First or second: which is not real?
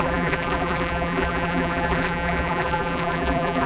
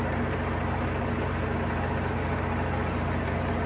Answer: first